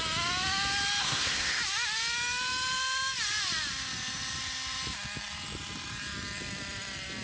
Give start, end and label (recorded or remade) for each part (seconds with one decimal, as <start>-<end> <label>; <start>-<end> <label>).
0.0-1.0 recorded; 1.0-1.6 remade; 1.6-7.2 recorded